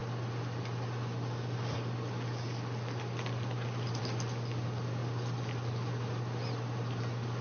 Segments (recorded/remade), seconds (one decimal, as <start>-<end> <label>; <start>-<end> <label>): 0.0-7.4 recorded